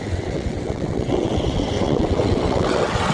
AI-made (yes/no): yes